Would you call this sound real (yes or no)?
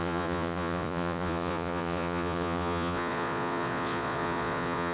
no